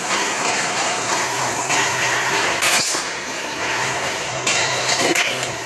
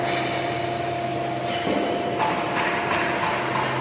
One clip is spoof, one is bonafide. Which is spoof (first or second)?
first